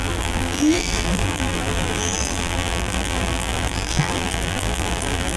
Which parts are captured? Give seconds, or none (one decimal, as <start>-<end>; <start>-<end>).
none